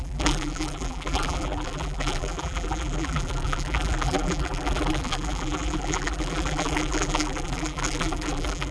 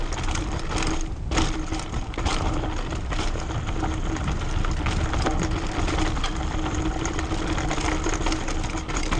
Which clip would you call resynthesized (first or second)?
first